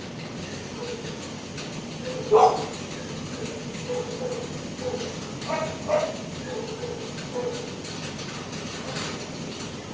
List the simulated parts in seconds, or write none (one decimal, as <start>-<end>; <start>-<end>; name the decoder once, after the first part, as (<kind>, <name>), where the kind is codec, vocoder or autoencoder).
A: none